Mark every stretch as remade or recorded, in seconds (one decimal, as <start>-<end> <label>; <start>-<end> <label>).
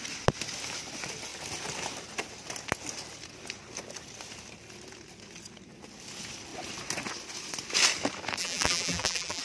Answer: 0.0-8.4 recorded; 8.4-9.4 remade